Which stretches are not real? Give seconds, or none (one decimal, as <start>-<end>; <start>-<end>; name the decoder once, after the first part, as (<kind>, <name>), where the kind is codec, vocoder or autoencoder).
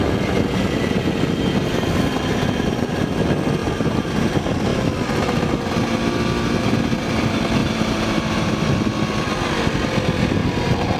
3.6-4.1 (vocoder, BigVGAN v2); 7.6-8.5; 10.4-11.0